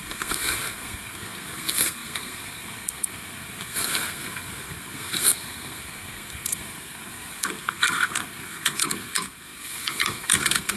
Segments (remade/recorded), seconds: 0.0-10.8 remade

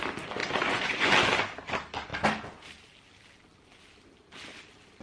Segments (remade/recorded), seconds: 0.0-0.4 recorded; 0.4-1.1 remade; 1.1-5.0 recorded

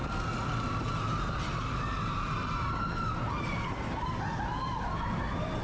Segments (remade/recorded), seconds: 0.0-5.6 recorded

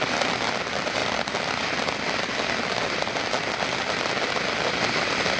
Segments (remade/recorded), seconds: 0.0-5.4 recorded

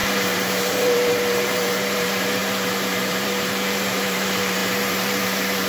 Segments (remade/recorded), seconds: 0.0-5.7 remade

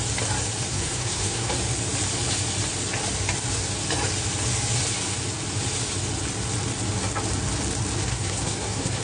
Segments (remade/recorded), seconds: 0.0-0.7 recorded; 0.7-1.5 remade; 1.5-8.1 recorded; 8.1-9.0 remade

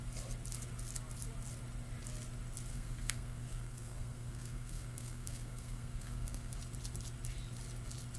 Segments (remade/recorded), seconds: 0.0-2.7 recorded; 2.7-6.6 remade; 6.6-8.2 recorded

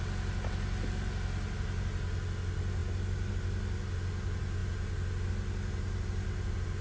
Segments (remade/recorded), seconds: 0.0-6.8 recorded